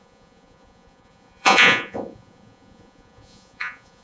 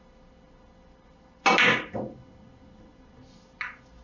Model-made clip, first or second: first